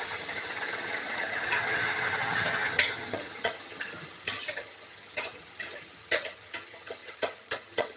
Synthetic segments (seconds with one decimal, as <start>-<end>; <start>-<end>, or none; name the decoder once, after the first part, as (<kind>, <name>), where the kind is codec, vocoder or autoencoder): 0.0-8.0 (vocoder, HiFi-GAN)

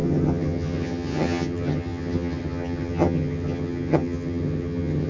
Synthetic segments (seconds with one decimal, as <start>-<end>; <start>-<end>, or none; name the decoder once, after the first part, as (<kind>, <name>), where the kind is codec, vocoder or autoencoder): 0.0-5.1 (vocoder, HiFi-GAN)

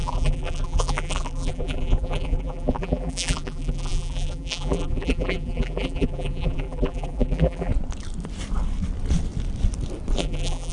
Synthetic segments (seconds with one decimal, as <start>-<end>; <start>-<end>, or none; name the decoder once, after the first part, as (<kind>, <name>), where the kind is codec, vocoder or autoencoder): 0.0-7.7 (vocoder, BigVGAN v2); 10.2-10.7

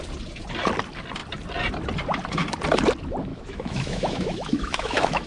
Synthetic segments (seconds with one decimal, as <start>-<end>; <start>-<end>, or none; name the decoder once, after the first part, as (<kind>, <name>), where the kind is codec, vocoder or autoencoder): 3.3-5.3 (autoencoder, DAC-VAE)

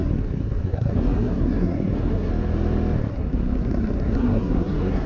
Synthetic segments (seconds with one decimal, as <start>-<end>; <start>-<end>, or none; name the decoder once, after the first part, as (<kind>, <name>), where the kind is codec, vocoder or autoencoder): 0.0-2.3 (codec, SNAC); 3.1-5.1

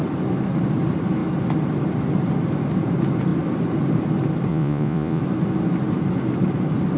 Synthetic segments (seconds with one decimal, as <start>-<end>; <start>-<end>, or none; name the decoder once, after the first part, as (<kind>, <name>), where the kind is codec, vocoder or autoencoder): 4.5-5.2 (vocoder, Vocos)

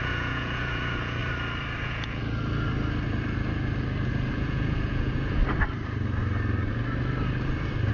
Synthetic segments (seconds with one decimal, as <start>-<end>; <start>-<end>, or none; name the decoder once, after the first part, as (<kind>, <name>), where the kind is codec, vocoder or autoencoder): 0.0-1.2 (vocoder, Vocos); 1.8-2.2; 4.3-5.4